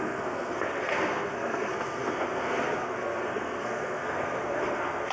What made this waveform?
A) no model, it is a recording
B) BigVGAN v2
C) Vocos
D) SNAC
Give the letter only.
D